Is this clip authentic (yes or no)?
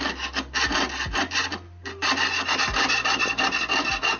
yes